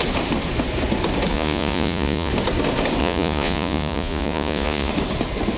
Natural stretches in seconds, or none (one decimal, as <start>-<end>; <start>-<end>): 0.0-1.3; 2.3-3.0; 4.9-5.6